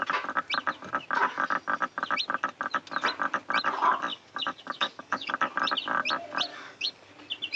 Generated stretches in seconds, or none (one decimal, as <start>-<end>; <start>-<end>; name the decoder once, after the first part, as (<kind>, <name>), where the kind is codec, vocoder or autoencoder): 4.1-5.3 (codec, DAC); 6.5-7.1